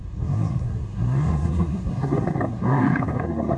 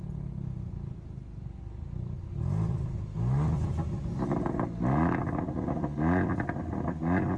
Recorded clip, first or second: second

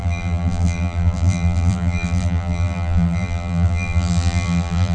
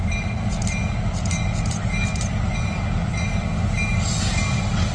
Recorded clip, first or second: second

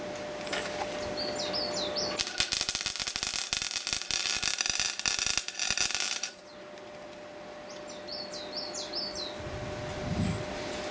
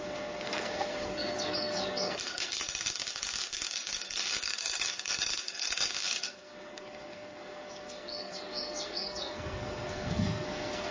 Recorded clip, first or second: first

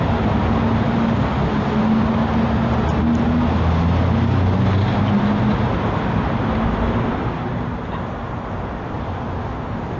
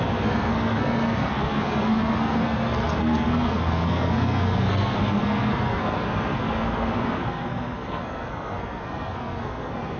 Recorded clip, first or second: first